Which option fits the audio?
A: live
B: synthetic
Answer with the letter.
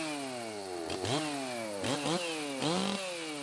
A